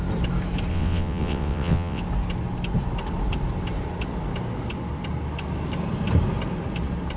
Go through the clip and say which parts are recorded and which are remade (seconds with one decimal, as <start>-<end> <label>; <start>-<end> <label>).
0.0-0.7 recorded; 0.7-2.0 remade; 2.0-7.2 recorded